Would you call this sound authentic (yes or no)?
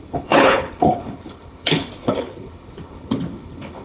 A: no